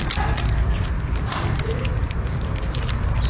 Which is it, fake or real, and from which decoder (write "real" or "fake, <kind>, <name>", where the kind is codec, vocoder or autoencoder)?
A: real